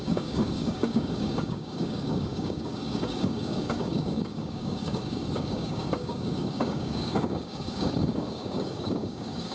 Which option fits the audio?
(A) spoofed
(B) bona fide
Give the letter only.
A